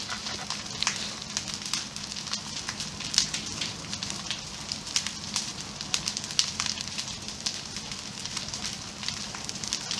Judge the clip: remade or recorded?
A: recorded